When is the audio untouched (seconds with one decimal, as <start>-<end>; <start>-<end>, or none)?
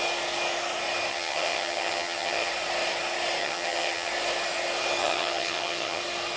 0.0-1.1; 2.5-3.4; 4.1-5.0; 6.0-6.4